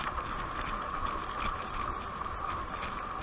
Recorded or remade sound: recorded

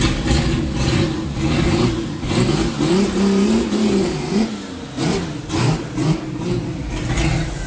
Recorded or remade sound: recorded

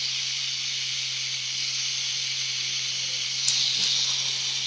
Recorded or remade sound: recorded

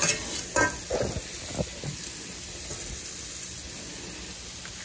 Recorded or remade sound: recorded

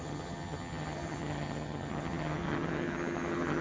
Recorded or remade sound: remade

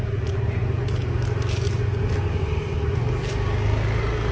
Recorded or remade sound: recorded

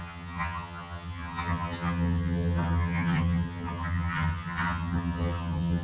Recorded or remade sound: remade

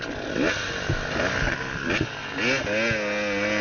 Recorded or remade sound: recorded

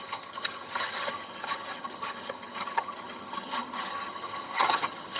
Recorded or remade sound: remade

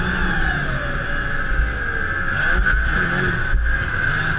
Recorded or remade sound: recorded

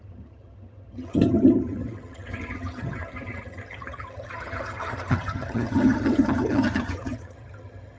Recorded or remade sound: remade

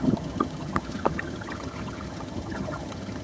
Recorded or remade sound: remade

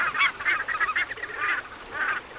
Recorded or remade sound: recorded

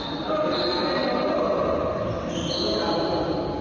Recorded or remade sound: recorded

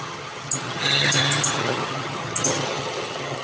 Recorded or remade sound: remade